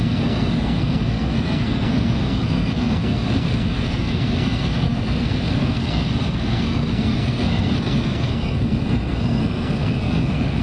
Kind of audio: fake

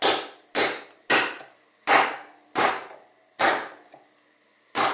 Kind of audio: real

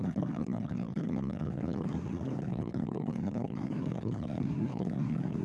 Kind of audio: fake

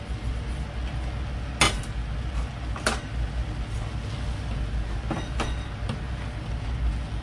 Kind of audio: real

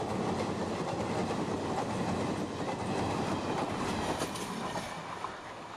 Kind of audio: real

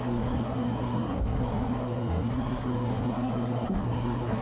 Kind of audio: fake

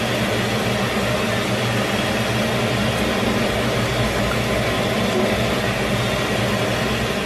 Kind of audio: real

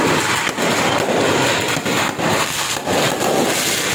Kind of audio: real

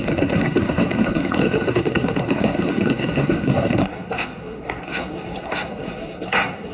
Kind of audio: fake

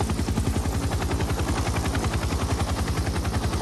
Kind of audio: real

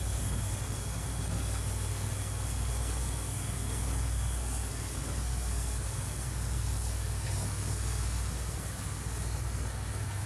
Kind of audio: fake